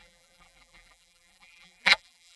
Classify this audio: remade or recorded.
remade